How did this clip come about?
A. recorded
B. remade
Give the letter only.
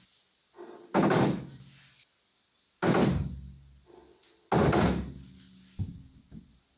A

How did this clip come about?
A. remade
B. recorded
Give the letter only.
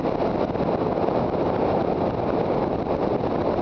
B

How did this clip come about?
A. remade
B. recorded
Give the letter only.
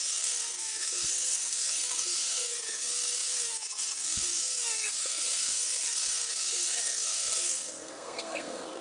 A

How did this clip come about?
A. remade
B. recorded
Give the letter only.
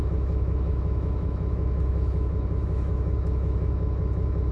A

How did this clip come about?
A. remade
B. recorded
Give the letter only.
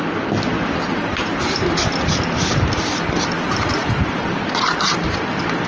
B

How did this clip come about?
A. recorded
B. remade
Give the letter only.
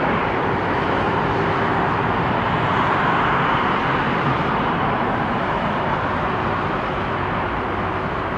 A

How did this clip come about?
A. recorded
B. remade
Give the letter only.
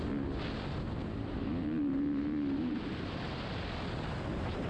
A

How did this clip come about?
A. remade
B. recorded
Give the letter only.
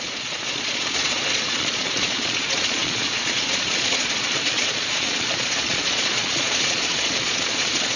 A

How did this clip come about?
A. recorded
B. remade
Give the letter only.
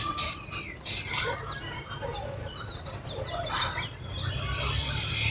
A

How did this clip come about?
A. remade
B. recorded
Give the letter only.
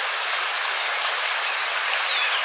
B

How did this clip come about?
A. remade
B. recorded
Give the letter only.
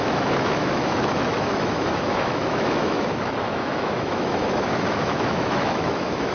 A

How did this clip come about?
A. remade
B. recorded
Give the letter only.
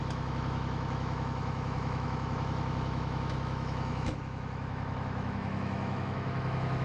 A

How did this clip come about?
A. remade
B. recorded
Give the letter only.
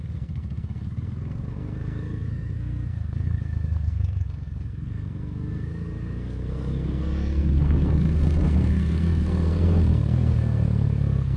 A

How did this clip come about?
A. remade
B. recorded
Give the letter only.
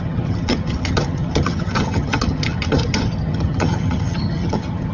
A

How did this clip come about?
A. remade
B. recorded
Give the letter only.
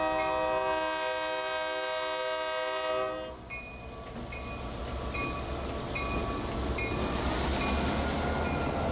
B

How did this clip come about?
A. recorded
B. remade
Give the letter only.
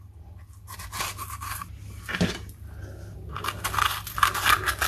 A